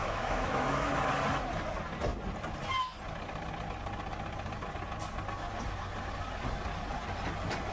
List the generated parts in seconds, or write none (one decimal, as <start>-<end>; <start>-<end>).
0.0-0.9